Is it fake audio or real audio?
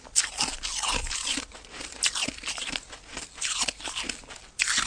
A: real